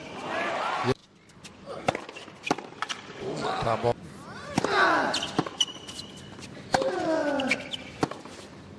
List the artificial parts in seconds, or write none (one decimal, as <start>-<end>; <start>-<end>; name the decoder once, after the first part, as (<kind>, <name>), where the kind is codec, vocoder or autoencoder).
none